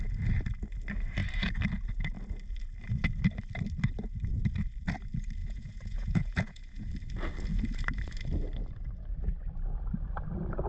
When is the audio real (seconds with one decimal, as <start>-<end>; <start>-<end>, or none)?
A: 0.0-5.4; 6.9-10.7